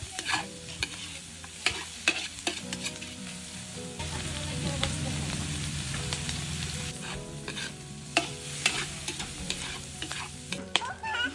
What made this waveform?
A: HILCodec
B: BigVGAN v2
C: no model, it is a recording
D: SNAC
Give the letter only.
B